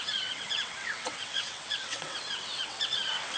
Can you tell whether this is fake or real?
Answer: fake